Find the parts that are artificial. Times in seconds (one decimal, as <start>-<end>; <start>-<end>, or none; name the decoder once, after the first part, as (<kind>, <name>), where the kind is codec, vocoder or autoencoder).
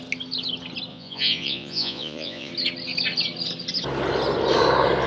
0.9-2.5 (vocoder, Vocos)